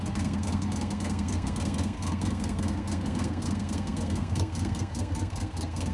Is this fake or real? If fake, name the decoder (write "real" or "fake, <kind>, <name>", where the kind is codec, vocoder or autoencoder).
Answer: fake, codec, SNAC